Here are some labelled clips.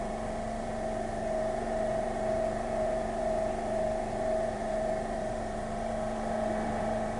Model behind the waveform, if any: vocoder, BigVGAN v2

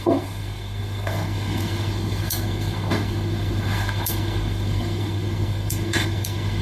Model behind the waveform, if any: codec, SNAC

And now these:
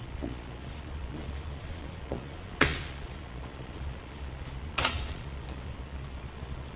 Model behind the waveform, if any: vocoder, Vocos